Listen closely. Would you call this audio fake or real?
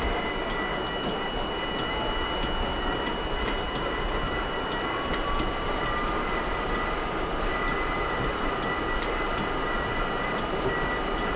real